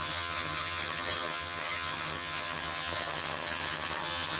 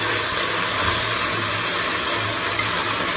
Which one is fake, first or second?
first